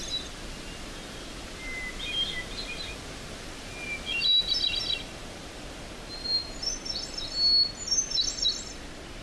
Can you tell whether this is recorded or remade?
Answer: recorded